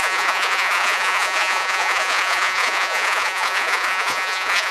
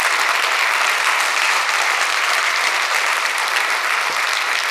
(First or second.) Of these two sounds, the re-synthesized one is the first